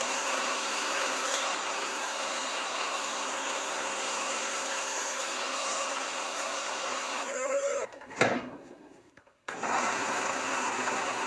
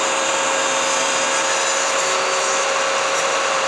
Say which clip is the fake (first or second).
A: first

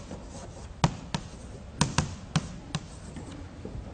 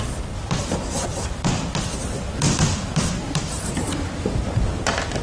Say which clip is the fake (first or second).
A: second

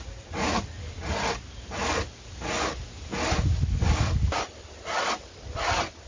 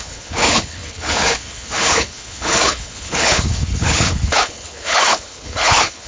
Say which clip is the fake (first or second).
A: second